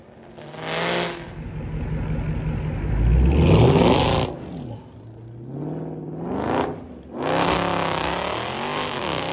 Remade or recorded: recorded